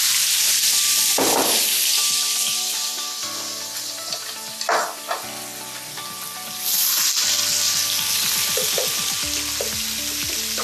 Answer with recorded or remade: recorded